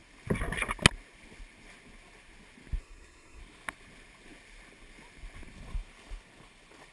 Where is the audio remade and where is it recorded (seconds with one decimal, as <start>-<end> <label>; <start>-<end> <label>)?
0.0-2.8 recorded; 2.8-3.4 remade; 3.4-6.9 recorded